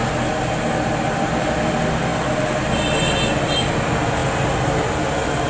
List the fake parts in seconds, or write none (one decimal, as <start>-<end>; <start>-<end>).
none